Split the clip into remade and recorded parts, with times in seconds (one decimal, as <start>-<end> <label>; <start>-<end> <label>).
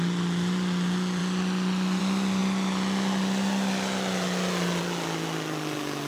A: 0.0-6.1 recorded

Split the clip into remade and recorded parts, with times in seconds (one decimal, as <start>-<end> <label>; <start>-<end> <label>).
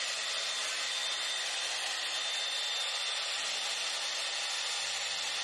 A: 0.0-5.4 recorded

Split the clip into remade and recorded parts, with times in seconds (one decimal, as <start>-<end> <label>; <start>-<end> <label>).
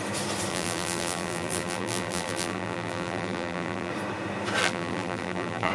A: 0.0-0.5 recorded; 0.5-3.9 remade; 3.9-4.6 recorded; 4.6-5.7 remade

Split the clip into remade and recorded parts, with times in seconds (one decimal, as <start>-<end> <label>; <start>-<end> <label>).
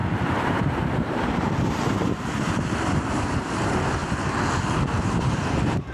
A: 0.0-4.0 remade; 4.0-5.0 recorded; 5.0-5.9 remade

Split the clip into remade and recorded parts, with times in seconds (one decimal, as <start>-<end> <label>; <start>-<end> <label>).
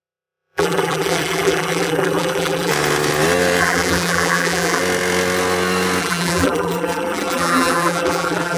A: 0.0-2.7 remade; 2.7-3.6 recorded; 3.6-4.8 remade; 4.8-6.0 recorded; 6.0-8.6 remade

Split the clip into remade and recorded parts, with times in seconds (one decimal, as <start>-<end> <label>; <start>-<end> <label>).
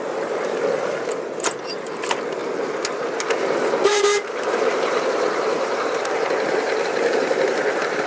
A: 0.0-3.9 recorded; 3.9-6.3 remade; 6.3-8.1 recorded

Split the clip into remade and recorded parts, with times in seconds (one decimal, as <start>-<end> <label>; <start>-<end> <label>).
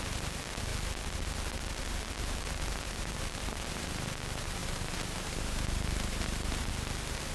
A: 0.0-4.6 recorded; 4.6-6.7 remade; 6.7-7.3 recorded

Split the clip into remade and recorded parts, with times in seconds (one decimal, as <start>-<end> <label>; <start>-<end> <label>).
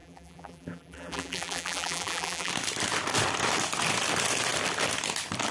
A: 0.0-2.5 remade; 2.5-5.5 recorded